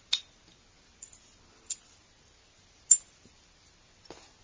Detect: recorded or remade recorded